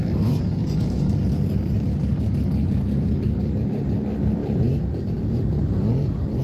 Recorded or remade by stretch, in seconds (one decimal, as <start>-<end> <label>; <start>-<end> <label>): 0.0-0.6 recorded; 0.6-3.6 remade; 3.6-6.4 recorded